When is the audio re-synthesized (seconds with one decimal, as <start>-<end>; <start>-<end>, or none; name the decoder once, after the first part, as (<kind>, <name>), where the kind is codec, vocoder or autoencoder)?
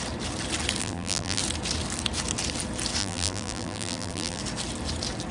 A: 0.8-1.4 (vocoder, BigVGAN v2); 3.0-4.4